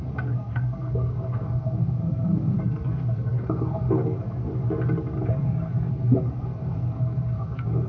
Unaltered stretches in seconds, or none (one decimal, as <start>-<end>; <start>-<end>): 4.5-5.9